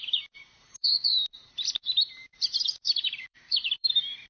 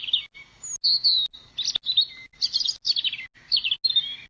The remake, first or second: first